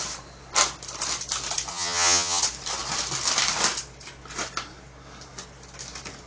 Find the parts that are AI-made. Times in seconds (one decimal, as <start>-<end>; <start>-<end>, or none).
1.7-2.4